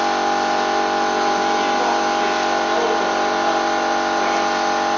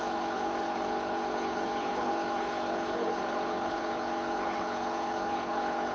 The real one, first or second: first